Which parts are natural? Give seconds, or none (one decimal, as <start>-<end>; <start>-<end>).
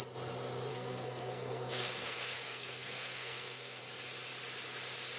0.0-0.7; 3.8-5.2